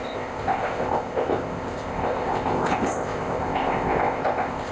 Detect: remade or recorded remade